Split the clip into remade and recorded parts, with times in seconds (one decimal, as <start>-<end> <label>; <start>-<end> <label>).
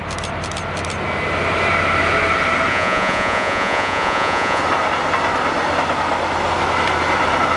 0.0-2.7 recorded; 2.7-4.6 remade; 4.6-7.6 recorded